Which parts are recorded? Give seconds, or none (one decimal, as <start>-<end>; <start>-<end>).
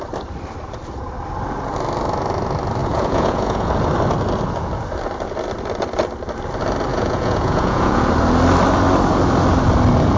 0.0-2.8; 3.7-6.9; 8.1-10.2